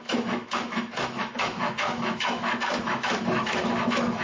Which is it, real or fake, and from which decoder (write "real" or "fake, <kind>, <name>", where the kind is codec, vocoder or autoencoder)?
fake, autoencoder, DAC-VAE